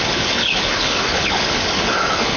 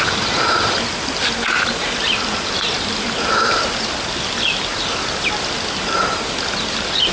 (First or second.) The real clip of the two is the second